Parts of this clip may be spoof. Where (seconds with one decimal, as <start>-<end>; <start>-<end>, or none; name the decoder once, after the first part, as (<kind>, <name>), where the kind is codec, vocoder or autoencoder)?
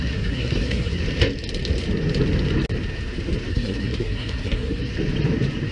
0.0-1.0 (codec, SNAC); 3.5-4.9